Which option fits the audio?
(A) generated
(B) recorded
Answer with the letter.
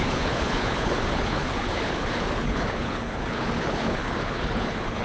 A